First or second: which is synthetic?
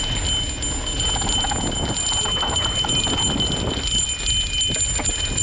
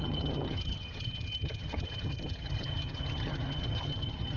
second